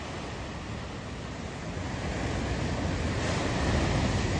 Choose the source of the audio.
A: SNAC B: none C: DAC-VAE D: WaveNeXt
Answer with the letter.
B